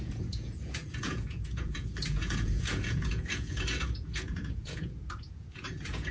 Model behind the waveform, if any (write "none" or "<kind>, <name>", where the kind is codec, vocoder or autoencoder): vocoder, Vocos